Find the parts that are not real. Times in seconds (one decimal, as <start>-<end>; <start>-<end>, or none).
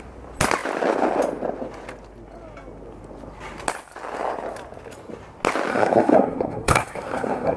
5.7-7.6